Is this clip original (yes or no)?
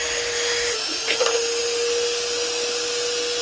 yes